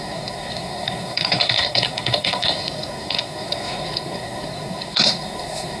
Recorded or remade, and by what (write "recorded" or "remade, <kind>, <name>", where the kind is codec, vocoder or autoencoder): remade, codec, SNAC